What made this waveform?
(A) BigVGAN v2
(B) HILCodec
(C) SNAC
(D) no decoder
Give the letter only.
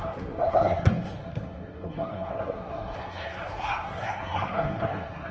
C